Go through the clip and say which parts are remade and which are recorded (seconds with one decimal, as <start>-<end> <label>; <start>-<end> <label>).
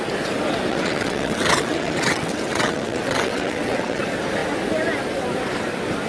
0.0-0.7 recorded; 0.7-4.0 remade; 4.0-6.1 recorded